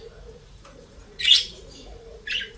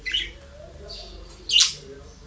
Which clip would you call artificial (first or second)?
first